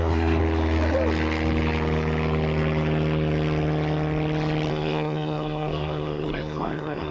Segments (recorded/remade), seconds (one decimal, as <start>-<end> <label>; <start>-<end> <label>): 0.0-0.4 remade; 0.4-4.7 recorded; 4.7-7.1 remade